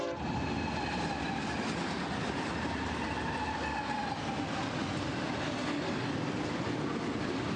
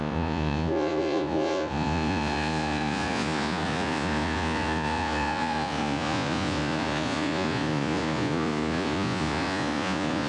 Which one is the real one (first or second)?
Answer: first